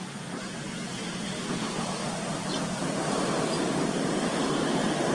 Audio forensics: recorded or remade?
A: recorded